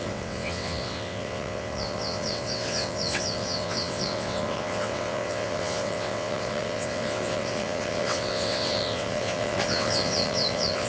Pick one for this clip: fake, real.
fake